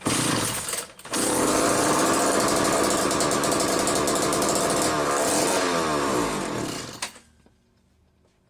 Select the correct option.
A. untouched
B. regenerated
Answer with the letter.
A